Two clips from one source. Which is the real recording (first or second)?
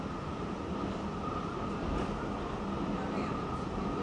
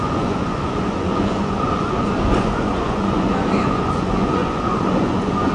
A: first